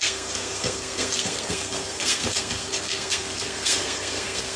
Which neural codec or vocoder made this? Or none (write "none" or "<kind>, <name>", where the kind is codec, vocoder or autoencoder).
codec, SNAC